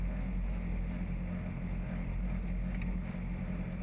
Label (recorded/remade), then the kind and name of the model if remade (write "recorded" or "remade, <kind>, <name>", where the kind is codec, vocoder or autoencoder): recorded